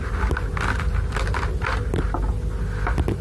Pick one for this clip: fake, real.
real